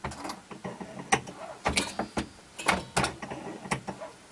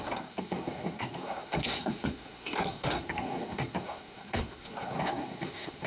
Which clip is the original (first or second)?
first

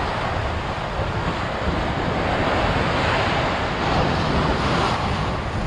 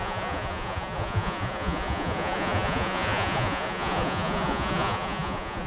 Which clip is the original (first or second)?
first